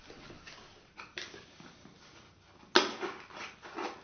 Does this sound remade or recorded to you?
recorded